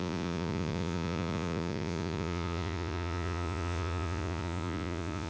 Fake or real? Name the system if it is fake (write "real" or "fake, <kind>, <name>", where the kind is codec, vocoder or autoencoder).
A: fake, vocoder, Vocos